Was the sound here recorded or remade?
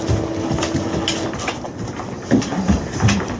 recorded